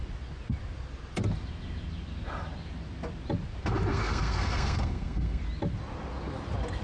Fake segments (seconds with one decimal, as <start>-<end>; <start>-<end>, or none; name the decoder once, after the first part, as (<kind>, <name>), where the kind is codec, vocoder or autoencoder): 3.9-5.4 (codec, SNAC)